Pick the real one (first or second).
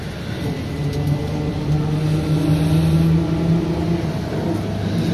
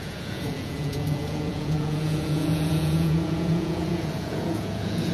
first